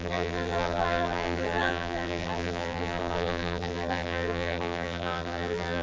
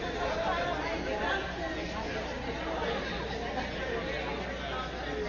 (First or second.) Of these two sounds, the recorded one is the second